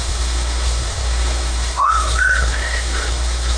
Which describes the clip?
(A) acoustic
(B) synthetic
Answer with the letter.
B